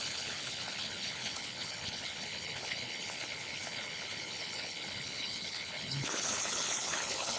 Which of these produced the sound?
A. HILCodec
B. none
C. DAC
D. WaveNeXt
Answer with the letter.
A